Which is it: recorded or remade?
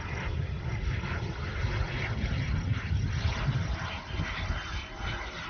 recorded